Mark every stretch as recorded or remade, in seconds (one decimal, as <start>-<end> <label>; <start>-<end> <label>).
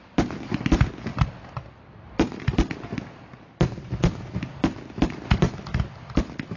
0.0-6.6 recorded